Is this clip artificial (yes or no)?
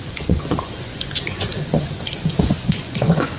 yes